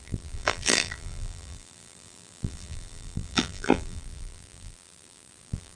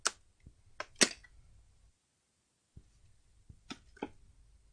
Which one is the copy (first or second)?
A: first